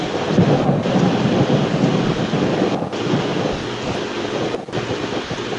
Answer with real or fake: real